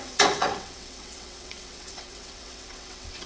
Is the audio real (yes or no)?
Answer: no